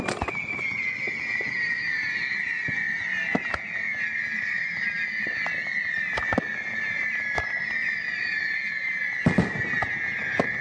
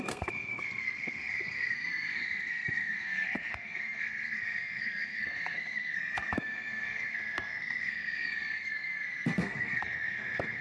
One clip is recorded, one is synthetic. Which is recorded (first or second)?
first